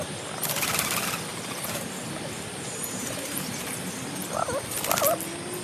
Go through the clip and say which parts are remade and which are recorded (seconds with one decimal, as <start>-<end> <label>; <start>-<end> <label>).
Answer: 0.0-1.3 recorded; 1.3-4.4 remade; 4.4-5.6 recorded